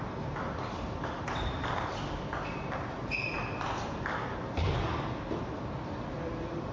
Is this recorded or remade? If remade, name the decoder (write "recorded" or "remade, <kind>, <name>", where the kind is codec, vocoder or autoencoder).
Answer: recorded